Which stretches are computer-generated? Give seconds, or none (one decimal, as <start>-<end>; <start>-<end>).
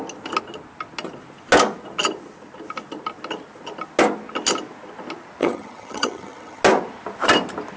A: 5.4-6.6